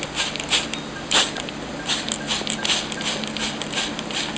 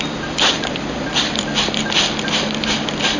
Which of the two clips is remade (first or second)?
second